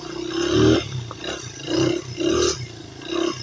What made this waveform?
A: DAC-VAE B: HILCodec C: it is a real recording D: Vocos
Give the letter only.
C